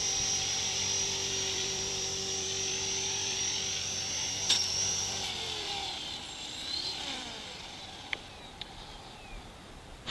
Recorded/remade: remade